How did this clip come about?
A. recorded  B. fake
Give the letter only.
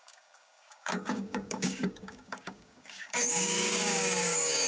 B